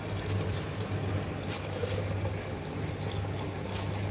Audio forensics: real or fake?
real